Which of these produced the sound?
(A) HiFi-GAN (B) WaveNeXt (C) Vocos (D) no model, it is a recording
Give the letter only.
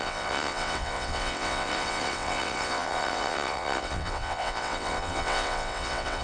B